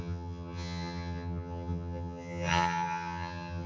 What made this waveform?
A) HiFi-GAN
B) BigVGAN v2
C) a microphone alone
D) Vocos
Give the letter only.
A